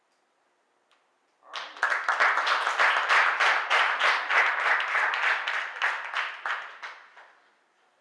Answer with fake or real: real